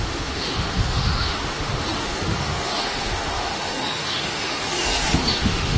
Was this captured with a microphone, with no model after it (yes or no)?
no